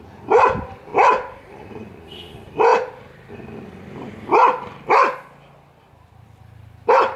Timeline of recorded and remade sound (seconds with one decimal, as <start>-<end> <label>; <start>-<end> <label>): 0.0-7.2 recorded